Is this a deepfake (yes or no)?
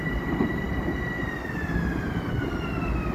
no